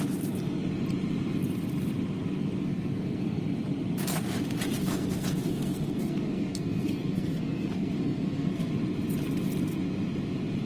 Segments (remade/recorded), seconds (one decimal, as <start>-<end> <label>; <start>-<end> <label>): 0.0-2.6 recorded; 2.6-3.4 remade; 3.4-4.8 recorded; 4.8-8.7 remade; 8.7-10.7 recorded